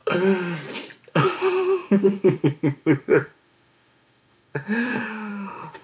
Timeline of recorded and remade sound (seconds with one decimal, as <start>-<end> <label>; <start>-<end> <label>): 0.0-1.1 recorded; 1.1-5.8 remade